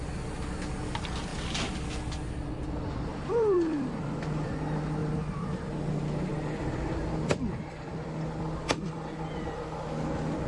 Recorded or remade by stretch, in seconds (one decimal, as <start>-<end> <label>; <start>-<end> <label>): 0.0-3.1 recorded; 3.1-4.5 remade; 4.5-5.0 recorded; 5.0-5.7 remade; 5.7-6.3 recorded; 6.3-8.4 remade; 8.4-10.5 recorded